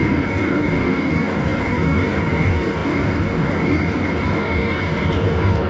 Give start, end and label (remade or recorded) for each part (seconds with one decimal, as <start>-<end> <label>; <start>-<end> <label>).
0.0-5.7 remade